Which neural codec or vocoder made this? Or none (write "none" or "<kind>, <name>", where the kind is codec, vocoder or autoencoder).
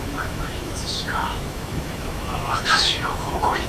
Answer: autoencoder, DAC-VAE